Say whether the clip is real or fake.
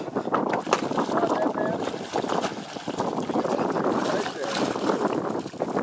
real